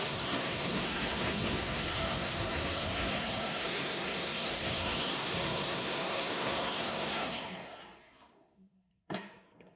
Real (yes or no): no